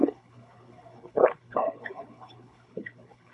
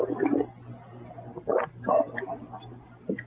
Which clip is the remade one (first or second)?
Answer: first